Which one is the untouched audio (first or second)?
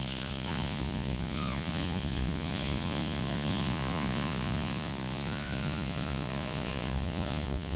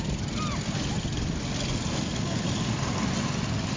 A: second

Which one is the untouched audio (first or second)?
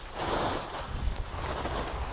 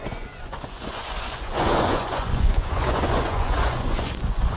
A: first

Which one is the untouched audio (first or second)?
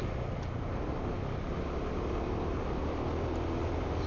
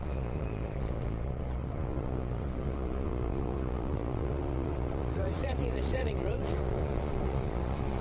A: first